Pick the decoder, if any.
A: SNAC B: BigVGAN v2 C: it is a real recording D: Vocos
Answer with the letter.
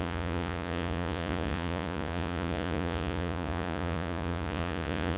D